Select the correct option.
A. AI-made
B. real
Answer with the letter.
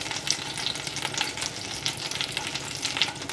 B